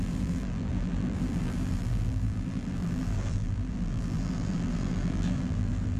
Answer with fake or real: fake